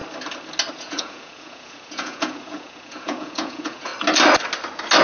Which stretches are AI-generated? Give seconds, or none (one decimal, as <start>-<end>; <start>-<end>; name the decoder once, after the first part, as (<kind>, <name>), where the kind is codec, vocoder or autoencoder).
0.7-3.9 (vocoder, Vocos)